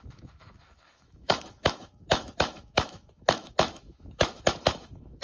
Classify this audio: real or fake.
fake